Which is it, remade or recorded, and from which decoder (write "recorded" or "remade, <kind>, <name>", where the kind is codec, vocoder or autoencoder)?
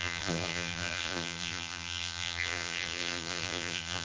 remade, vocoder, BigVGAN v2